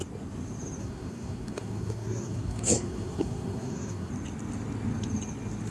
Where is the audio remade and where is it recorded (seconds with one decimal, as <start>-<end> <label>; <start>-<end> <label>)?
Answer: 0.0-0.8 recorded; 0.8-4.1 remade; 4.1-5.7 recorded